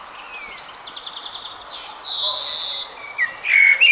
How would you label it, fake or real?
real